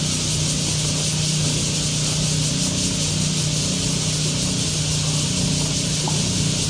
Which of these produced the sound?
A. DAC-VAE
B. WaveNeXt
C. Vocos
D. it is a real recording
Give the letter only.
D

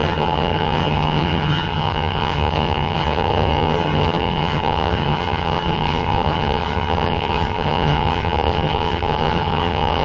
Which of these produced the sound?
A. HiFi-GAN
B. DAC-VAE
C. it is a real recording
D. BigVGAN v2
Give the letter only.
A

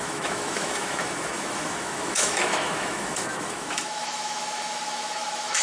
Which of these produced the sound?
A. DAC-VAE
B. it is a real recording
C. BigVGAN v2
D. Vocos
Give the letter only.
A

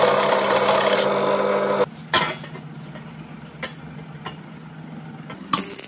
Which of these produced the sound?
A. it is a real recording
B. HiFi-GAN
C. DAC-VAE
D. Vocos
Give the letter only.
A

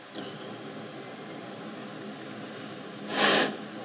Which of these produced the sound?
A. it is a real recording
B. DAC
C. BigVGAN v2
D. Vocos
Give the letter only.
A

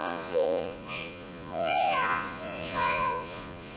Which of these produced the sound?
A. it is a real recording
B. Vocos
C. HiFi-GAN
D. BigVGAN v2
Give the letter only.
B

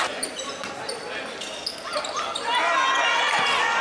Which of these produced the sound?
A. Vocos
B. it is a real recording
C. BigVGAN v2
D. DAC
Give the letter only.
B